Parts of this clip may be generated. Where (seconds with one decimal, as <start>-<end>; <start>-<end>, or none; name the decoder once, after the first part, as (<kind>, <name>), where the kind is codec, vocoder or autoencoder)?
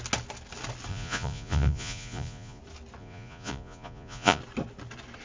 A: 0.9-2.6 (vocoder, Vocos); 3.0-4.4